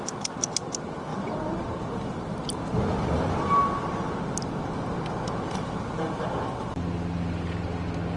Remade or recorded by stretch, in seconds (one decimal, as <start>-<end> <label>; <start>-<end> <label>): 0.0-8.2 recorded